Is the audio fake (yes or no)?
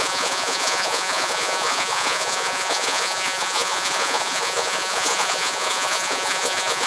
yes